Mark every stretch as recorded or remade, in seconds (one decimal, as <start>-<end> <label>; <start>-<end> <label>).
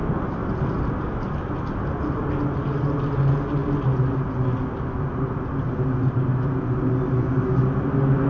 0.0-8.3 recorded